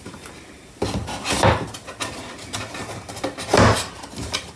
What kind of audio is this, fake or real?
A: real